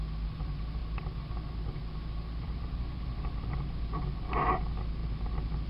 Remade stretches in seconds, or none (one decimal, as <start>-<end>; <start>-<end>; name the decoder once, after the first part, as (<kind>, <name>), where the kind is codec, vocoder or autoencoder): none